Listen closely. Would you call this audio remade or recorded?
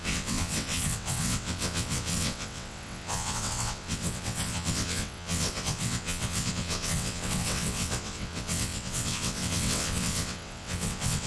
remade